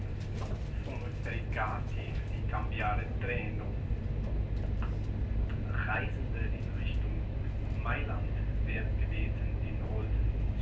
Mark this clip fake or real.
real